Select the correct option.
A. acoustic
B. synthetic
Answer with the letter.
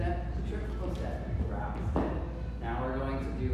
A